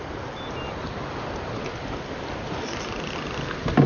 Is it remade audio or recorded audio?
recorded